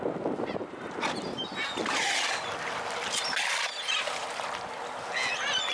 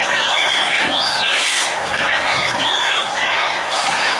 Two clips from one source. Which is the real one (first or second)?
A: first